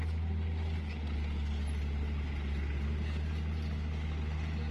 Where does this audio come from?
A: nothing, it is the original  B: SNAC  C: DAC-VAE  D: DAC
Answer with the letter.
A